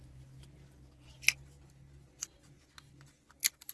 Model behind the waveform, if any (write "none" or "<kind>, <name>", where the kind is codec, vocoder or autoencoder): none